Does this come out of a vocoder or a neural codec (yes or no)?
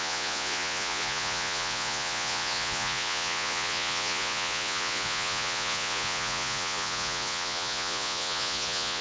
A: yes